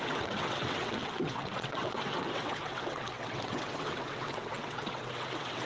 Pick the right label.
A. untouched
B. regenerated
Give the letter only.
B